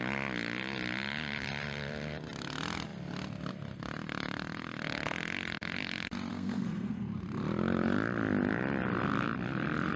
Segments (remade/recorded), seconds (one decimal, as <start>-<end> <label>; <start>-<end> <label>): 0.0-6.3 recorded; 6.3-6.9 remade; 6.9-10.0 recorded